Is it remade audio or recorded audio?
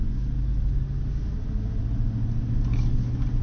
recorded